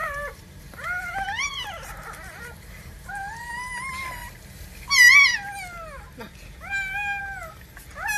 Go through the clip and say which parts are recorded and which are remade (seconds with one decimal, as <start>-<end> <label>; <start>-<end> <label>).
0.0-3.5 remade; 3.5-4.2 recorded; 4.2-4.9 remade; 4.9-8.2 recorded